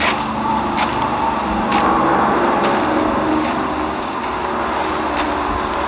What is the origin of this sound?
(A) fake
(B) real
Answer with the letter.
B